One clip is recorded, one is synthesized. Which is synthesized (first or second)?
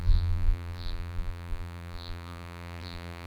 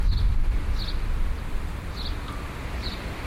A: first